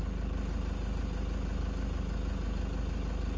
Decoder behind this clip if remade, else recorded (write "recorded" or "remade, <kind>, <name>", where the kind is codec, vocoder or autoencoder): recorded